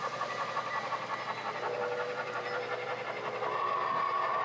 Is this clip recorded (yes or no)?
no